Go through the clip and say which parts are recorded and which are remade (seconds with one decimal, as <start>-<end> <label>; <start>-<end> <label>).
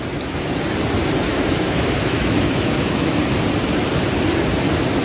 0.0-1.3 recorded; 1.3-3.1 remade; 3.1-5.0 recorded